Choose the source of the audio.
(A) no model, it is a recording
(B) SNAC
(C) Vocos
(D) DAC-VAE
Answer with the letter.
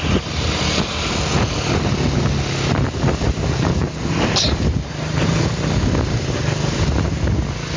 A